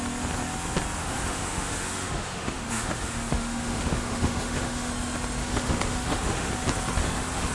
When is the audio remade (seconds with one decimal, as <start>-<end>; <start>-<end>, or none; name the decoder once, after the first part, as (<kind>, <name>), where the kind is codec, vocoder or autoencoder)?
1.0-4.9 (autoencoder, DAC-VAE); 5.4-6.5; 7.0-7.5

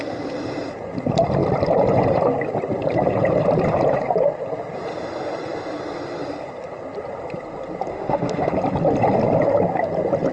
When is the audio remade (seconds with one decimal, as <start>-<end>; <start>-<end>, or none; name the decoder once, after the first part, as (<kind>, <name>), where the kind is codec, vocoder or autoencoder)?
7.9-8.5 (autoencoder, DAC-VAE)

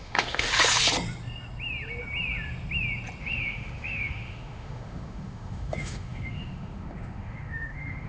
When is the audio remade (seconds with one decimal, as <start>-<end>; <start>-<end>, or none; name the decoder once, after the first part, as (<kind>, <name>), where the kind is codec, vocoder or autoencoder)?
0.0-0.5 (autoencoder, DAC-VAE); 3.2-8.1

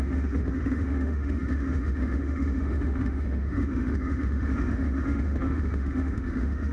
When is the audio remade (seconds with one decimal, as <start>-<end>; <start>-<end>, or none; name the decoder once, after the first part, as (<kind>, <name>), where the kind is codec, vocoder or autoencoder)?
0.0-6.7 (autoencoder, DAC-VAE)

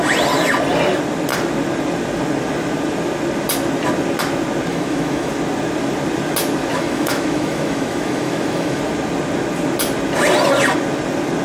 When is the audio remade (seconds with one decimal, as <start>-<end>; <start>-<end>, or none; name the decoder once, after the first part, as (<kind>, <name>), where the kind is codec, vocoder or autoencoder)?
4.7-5.3 (autoencoder, DAC-VAE); 6.7-8.8

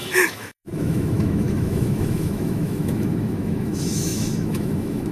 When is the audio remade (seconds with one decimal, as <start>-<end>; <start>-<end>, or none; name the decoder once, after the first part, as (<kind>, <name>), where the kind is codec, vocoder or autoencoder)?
0.0-5.1 (autoencoder, DAC-VAE)

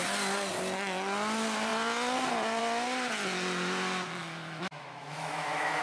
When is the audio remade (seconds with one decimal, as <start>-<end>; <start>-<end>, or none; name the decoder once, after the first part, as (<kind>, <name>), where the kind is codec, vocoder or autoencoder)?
4.2-5.8 (autoencoder, DAC-VAE)